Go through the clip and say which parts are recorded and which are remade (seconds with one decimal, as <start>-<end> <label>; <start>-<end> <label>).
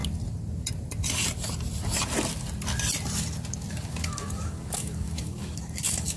0.0-3.7 recorded; 3.7-6.2 remade